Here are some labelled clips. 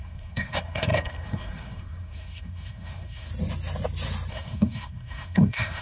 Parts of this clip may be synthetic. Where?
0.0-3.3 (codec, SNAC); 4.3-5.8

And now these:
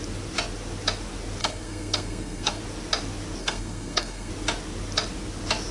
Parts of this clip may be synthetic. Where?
1.4-2.6 (codec, SNAC); 3.4-4.3

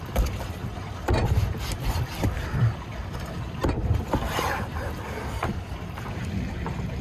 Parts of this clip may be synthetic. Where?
0.0-7.0 (vocoder, BigVGAN v2)